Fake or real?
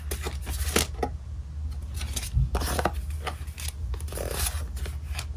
real